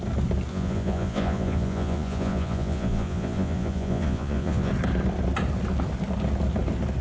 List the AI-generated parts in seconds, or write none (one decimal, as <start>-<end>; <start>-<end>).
0.5-4.7